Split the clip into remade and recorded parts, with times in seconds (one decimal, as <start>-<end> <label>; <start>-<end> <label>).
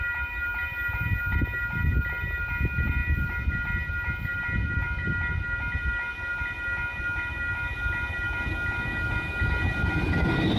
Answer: 0.0-10.6 recorded